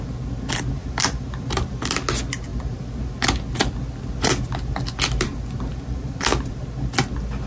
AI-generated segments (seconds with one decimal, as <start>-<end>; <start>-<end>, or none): 0.8-1.8; 2.5-3.1; 5.7-6.6